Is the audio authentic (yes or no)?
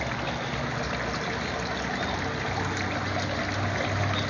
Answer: yes